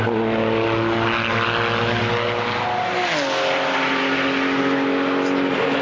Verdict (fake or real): real